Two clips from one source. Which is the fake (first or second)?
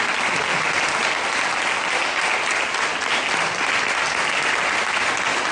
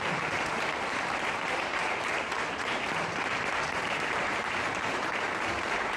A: second